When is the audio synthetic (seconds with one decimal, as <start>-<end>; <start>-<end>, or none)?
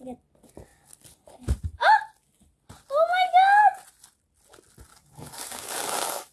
4.9-6.3